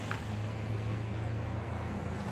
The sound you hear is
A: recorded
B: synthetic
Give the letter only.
B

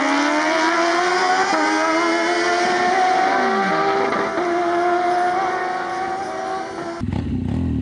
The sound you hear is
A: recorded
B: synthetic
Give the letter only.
A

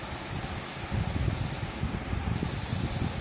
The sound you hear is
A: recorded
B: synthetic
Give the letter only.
A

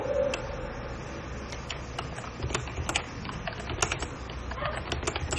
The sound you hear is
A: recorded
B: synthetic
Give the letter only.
A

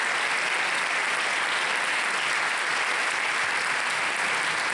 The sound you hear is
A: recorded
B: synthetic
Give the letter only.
A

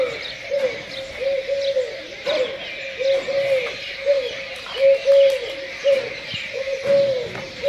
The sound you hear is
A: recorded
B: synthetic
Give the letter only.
A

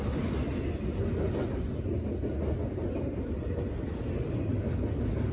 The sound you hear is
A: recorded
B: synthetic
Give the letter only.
A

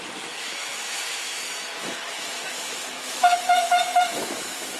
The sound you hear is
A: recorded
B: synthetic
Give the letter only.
B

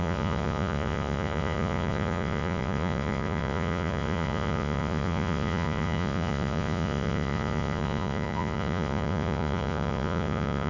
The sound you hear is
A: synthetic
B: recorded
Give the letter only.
A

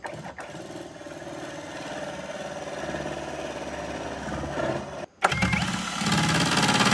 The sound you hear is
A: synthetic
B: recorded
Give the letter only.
B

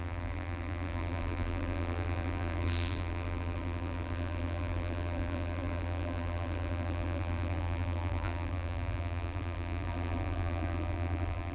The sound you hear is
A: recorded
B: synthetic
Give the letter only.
B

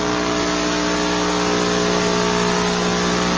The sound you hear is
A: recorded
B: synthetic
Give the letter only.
A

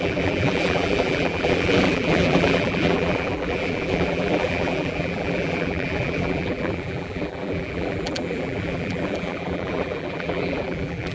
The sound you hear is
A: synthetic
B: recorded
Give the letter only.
A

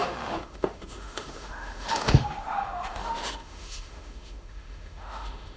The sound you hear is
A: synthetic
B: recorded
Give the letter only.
A